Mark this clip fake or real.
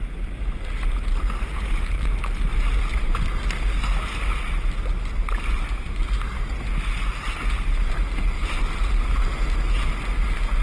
real